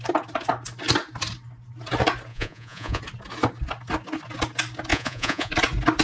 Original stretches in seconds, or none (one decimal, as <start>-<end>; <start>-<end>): 0.0-2.3; 3.0-4.9; 5.5-6.0